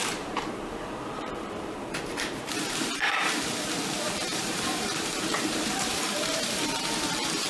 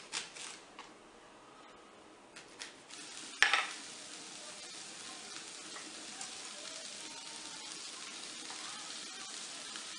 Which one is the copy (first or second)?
first